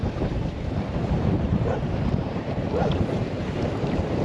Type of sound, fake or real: fake